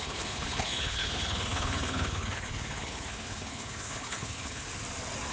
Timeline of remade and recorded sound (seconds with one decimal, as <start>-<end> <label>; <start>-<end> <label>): 0.0-4.7 remade; 4.7-5.3 recorded